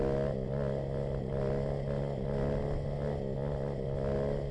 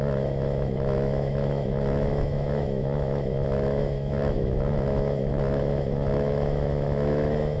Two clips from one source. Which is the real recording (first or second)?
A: first